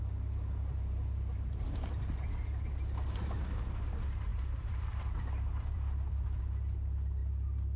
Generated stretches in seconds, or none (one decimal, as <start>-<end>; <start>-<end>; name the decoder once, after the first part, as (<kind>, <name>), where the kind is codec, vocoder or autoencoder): 4.3-6.4 (vocoder, BigVGAN v2)